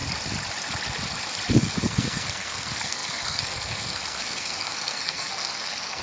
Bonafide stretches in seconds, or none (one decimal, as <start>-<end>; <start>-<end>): 0.0-1.5

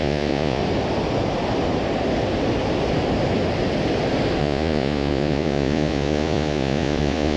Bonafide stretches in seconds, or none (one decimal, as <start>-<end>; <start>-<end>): 0.6-4.4

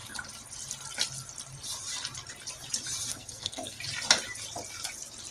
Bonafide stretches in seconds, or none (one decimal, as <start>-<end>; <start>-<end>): 0.0-3.1; 3.8-5.3

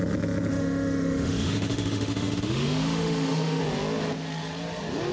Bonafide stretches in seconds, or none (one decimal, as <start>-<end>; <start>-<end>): 0.0-0.5; 3.6-5.1